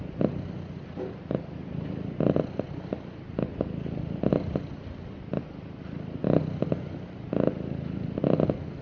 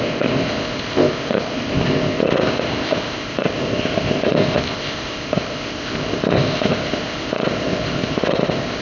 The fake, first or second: second